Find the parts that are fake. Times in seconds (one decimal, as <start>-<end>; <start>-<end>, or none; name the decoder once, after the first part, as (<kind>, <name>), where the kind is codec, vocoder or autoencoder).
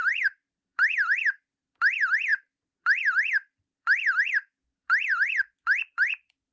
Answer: 0.0-6.5 (vocoder, BigVGAN v2)